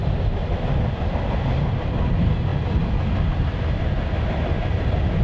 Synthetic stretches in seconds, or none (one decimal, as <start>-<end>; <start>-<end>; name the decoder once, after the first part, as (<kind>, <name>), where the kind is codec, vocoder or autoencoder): none